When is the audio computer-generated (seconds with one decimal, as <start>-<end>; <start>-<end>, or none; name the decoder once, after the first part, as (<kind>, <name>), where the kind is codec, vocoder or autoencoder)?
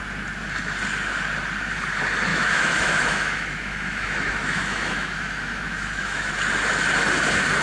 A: 2.3-6.3 (autoencoder, DAC-VAE)